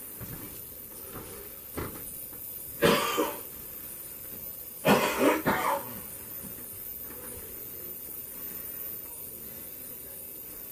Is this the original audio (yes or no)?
yes